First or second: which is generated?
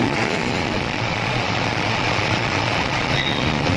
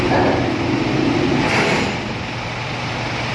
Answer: first